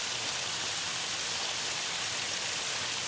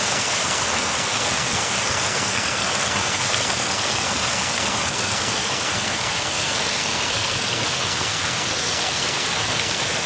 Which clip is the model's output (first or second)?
second